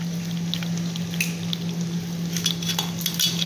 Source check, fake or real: real